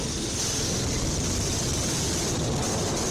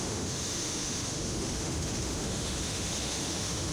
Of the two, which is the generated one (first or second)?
second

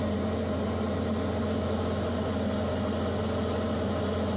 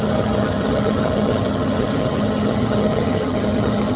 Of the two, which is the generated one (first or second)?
second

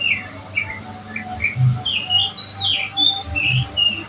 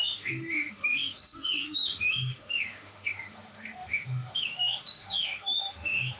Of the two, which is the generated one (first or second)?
second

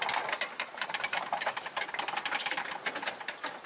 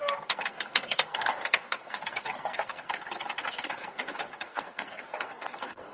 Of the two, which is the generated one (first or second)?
second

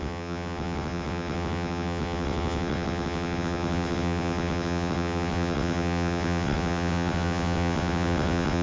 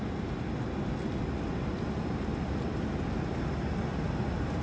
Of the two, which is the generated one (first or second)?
first